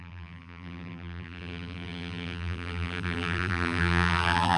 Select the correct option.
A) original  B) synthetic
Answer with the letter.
B